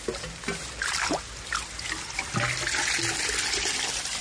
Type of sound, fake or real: real